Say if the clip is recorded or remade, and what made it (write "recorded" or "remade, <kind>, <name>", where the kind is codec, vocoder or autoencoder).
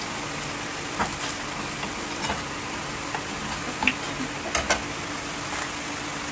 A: recorded